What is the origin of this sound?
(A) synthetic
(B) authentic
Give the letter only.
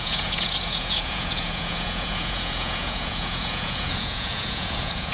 A